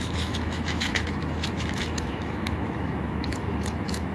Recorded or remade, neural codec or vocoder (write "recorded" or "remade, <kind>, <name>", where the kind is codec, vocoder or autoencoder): remade, autoencoder, DAC-VAE